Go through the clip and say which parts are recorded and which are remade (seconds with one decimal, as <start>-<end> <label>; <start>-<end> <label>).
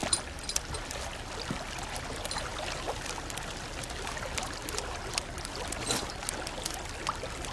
0.0-7.5 recorded